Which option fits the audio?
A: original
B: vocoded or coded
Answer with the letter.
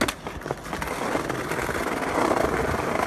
A